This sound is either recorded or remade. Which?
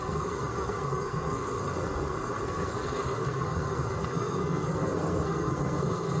remade